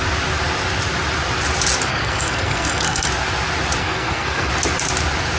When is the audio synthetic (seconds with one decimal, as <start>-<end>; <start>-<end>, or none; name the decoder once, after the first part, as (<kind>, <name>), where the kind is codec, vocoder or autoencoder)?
1.9-3.1 (codec, SNAC); 3.8-4.5